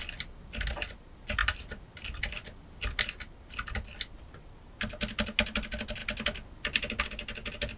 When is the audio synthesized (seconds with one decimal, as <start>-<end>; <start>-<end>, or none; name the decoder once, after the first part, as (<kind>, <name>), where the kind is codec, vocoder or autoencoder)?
none